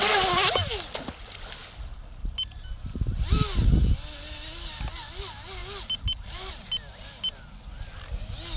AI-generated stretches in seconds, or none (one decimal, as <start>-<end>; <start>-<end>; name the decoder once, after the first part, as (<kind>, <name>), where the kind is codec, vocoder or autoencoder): none